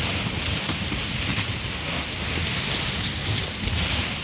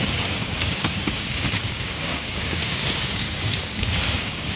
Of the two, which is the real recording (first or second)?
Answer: first